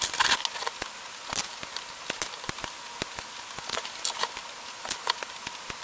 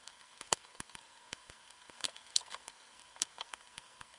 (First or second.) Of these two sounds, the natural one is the first